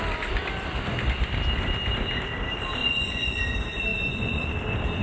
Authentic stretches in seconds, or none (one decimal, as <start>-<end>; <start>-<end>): 0.0-2.8; 3.4-3.9; 4.5-5.0